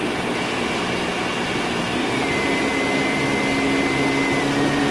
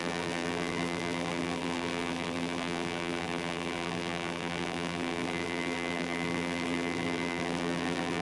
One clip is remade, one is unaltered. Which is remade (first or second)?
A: second